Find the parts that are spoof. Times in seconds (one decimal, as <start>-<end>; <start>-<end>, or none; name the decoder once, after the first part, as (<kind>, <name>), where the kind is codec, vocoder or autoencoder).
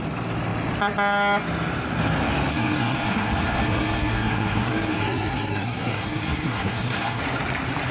2.5-7.2 (codec, SNAC)